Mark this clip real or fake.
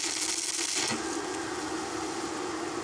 real